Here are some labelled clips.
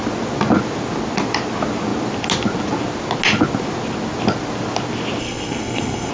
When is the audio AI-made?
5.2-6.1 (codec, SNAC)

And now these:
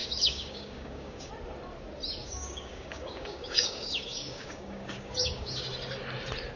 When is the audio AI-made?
0.0-1.3 (codec, DAC); 2.2-5.6

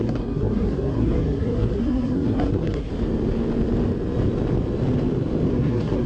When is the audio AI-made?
0.0-2.9 (codec, SNAC); 5.5-6.1